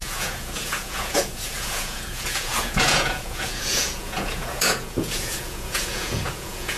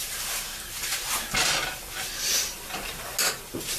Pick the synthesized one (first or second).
first